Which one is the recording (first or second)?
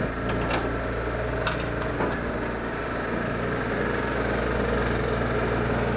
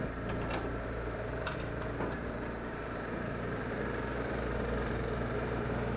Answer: first